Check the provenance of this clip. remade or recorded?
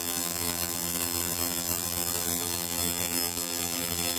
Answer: remade